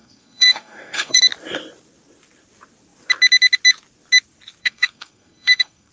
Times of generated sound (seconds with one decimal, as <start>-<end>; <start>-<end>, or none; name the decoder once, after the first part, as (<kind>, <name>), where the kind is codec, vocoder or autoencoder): 0.0-1.2 (codec, SNAC); 4.6-5.9